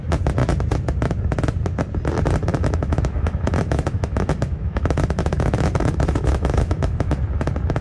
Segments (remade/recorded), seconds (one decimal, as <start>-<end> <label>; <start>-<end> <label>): 0.0-2.5 recorded; 2.5-7.2 remade; 7.2-7.8 recorded